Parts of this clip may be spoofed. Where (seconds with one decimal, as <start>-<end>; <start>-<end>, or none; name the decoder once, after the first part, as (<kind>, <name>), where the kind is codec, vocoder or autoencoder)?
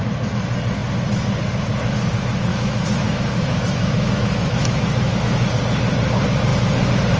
2.5-5.5 (autoencoder, DAC-VAE)